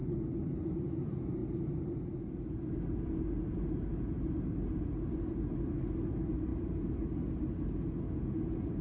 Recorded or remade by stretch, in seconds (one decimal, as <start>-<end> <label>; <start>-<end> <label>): 0.0-8.8 recorded